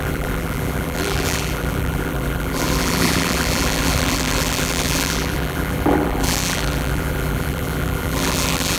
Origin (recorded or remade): remade